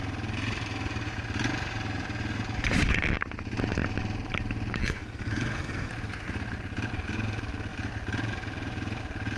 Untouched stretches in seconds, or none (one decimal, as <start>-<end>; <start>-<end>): 0.0-4.8; 5.9-9.4